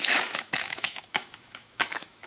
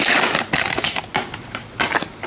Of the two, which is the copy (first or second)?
first